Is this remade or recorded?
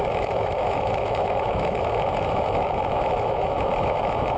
remade